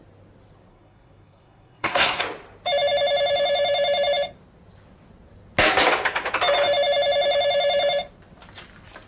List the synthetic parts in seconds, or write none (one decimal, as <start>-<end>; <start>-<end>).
0.7-2.2